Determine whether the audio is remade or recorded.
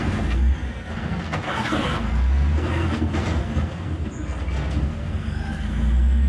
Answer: remade